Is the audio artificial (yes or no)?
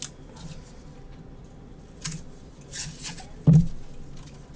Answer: no